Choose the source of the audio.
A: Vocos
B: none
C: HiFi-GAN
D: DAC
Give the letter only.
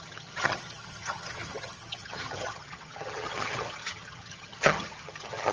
C